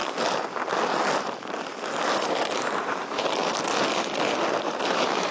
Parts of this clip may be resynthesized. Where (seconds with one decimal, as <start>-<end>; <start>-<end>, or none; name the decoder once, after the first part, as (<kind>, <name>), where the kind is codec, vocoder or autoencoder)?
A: 2.0-3.4 (vocoder, BigVGAN v2); 4.8-5.3